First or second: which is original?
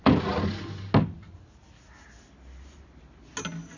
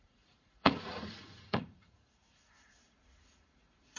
first